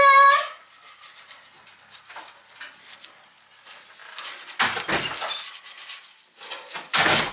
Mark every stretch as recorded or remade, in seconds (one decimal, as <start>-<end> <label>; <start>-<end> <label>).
0.0-7.3 recorded